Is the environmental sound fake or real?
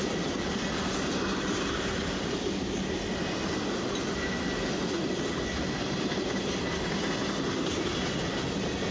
real